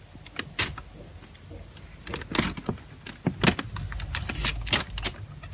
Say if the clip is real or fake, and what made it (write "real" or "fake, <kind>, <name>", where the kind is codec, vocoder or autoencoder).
real